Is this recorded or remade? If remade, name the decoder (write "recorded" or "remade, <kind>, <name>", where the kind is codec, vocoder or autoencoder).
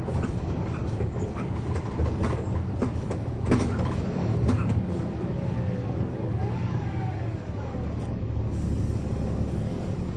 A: remade, codec, DAC